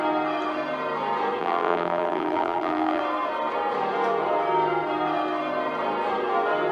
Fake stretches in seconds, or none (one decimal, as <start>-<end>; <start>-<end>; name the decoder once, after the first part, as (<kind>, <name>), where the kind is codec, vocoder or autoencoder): 1.4-3.0 (vocoder, BigVGAN v2)